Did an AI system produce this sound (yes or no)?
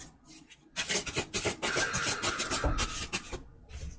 no